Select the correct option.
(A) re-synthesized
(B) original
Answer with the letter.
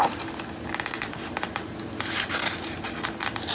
B